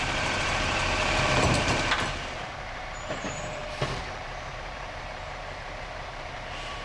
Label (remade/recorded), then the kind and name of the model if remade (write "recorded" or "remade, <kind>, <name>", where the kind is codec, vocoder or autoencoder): remade, vocoder, BigVGAN v2